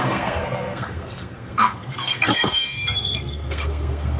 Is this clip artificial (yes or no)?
yes